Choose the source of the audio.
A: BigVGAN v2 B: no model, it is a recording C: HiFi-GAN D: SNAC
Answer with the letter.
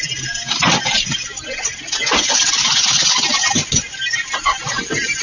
B